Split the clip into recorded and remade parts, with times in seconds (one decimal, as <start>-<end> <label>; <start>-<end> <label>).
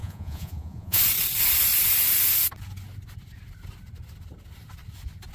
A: 0.0-1.0 remade; 1.0-5.3 recorded